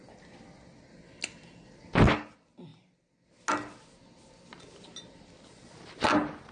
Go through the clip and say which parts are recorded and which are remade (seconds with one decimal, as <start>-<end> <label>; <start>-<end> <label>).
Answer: 0.0-6.5 recorded